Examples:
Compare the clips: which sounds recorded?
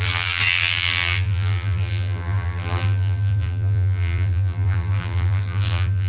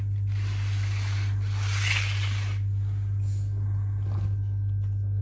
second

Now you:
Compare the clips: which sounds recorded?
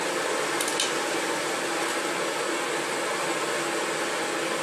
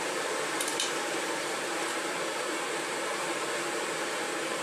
first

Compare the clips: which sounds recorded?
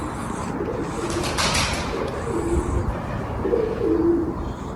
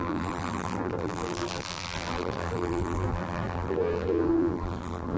first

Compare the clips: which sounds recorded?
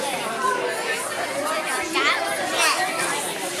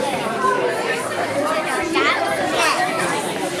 first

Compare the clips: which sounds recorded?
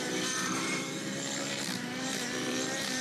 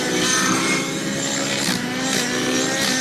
second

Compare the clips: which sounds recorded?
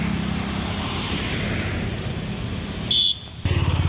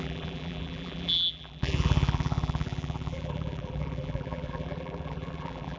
first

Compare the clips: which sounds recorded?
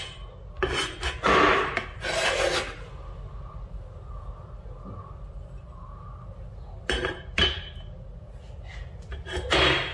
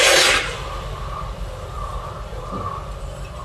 first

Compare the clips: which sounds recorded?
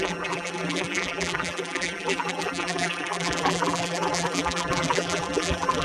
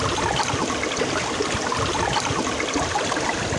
second